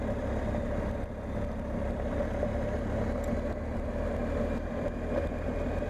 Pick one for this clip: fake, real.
real